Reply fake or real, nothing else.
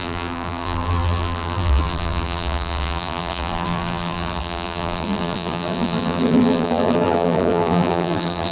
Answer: fake